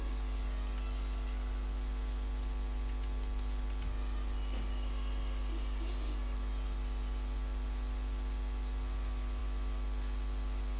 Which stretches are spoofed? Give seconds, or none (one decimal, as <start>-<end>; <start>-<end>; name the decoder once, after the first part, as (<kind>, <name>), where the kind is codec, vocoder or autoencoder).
none